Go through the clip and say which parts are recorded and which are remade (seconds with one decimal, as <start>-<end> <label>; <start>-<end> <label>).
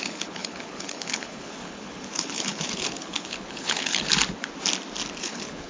0.0-4.1 remade; 4.1-5.2 recorded; 5.2-5.7 remade